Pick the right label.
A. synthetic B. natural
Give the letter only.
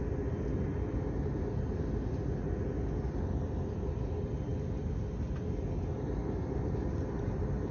B